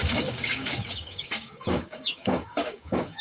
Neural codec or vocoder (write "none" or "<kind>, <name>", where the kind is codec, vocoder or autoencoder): codec, DAC